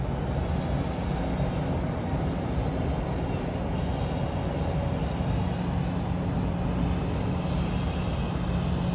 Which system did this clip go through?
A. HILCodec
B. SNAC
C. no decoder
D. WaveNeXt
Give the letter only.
C